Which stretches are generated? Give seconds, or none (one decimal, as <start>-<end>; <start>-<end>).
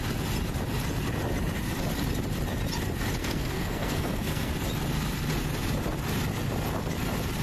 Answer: 3.2-4.5